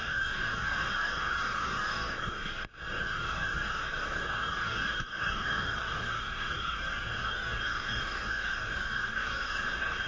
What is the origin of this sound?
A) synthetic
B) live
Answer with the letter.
A